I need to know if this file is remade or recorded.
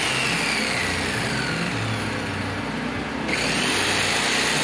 recorded